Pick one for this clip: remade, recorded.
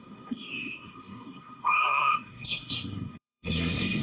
remade